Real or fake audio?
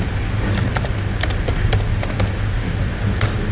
real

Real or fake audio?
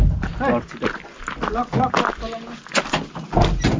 real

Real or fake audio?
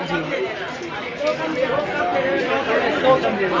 real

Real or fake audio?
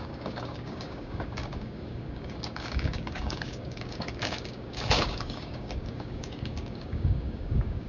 fake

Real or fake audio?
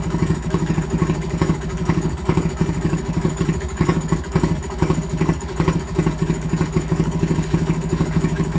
fake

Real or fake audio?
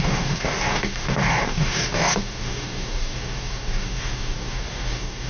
fake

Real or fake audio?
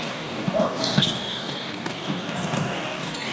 fake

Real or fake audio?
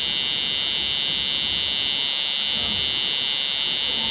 real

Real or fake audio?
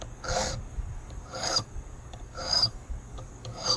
fake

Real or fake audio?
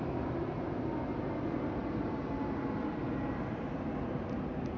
real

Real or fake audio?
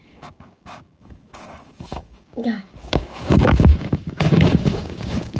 fake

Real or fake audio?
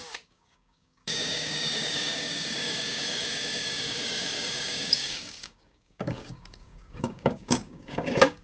fake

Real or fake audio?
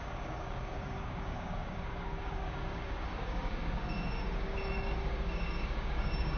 fake